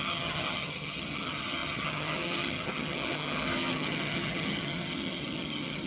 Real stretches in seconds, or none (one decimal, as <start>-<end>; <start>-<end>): none